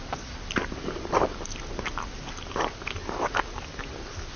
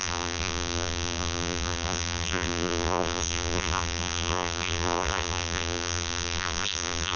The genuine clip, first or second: first